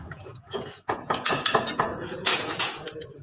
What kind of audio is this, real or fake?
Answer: fake